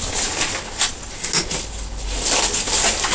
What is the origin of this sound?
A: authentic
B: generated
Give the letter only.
A